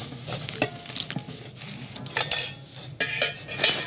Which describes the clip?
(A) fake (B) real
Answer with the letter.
B